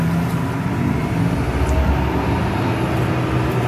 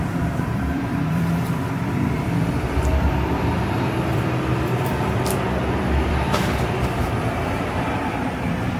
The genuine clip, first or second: first